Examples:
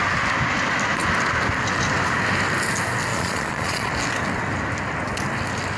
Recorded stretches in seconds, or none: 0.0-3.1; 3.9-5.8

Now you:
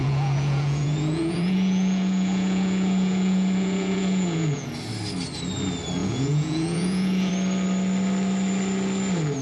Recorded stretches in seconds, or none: 4.7-6.0; 7.3-9.4

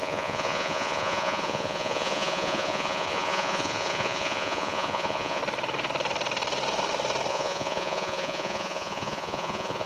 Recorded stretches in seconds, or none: 5.4-7.3

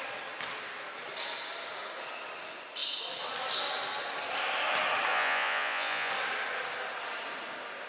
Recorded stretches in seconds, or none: 0.0-5.1; 6.1-7.9

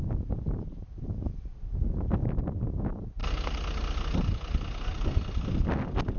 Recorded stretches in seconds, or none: 0.0-6.2

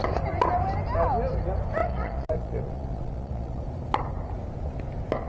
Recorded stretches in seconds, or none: 0.0-1.8; 3.6-5.3

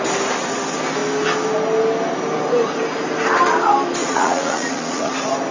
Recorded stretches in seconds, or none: 0.0-4.0; 5.1-5.5

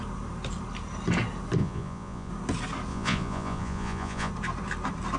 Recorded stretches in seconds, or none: 0.0-1.6; 2.3-2.9; 4.3-5.2